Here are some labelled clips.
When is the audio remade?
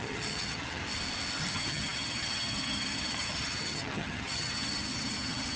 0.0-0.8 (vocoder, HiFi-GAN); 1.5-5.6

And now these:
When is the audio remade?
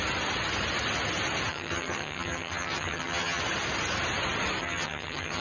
1.5-3.4 (vocoder, HiFi-GAN); 4.6-5.4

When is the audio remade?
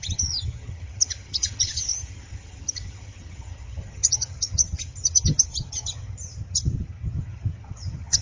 0.0-8.2 (vocoder, HiFi-GAN)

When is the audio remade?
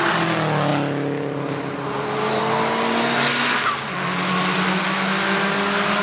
none